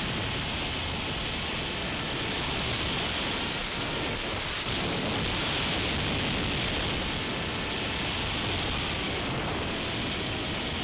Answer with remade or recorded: recorded